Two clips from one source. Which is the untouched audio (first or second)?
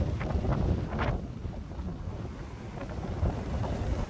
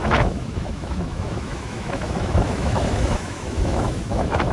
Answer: first